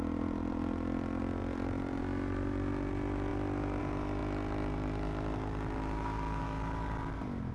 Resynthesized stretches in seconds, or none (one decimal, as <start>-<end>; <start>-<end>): 1.4-2.0; 3.3-3.8